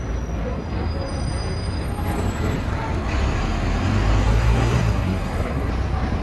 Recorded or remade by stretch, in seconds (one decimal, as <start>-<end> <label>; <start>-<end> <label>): 0.0-4.2 recorded; 4.2-5.7 remade; 5.7-6.2 recorded